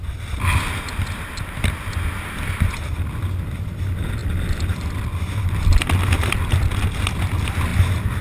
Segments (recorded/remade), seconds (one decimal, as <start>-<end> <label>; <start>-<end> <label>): 0.0-8.2 recorded

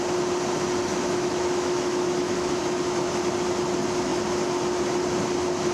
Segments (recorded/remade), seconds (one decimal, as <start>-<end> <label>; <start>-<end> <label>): 0.0-0.9 recorded; 0.9-2.6 remade; 2.6-5.7 recorded

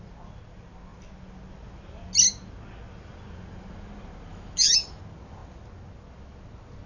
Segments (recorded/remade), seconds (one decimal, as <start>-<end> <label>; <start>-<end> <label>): 0.0-4.3 recorded; 4.3-5.0 remade; 5.0-6.9 recorded

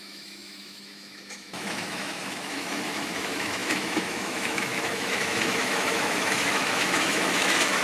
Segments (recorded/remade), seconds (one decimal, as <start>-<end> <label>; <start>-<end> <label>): 0.0-7.8 remade

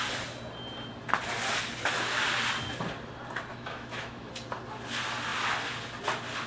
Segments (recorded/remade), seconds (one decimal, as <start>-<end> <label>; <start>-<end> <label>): 0.0-3.5 recorded; 3.5-4.3 remade; 4.3-6.5 recorded

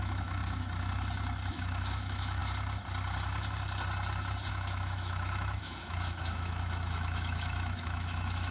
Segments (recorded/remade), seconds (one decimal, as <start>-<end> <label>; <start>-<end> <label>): 0.0-0.4 remade; 0.4-1.5 recorded; 1.5-2.4 remade; 2.4-4.5 recorded; 4.5-8.5 remade